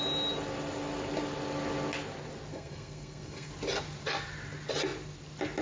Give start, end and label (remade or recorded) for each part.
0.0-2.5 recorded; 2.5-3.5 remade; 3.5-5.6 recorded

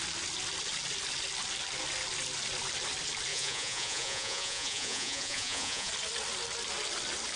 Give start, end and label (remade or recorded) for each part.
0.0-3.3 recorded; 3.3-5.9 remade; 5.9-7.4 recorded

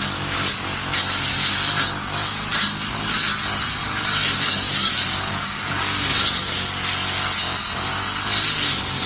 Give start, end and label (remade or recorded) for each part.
0.0-2.5 recorded; 2.5-3.2 remade; 3.2-3.8 recorded; 3.8-6.7 remade; 6.7-9.1 recorded

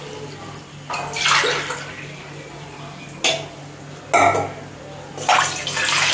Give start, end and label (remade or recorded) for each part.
0.0-6.1 recorded

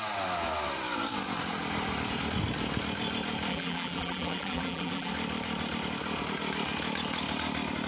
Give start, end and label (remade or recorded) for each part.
0.0-3.5 recorded; 3.5-5.1 remade; 5.1-7.9 recorded

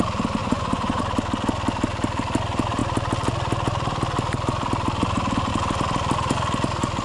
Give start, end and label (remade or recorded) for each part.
0.0-0.4 recorded; 0.4-1.0 remade; 1.0-7.0 recorded

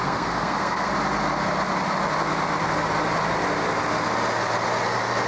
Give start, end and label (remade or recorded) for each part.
0.0-0.9 remade; 0.9-5.3 recorded